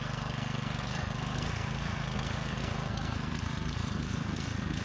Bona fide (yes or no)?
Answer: no